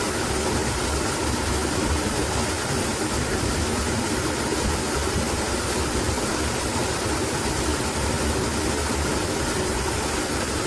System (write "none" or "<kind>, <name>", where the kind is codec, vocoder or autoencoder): none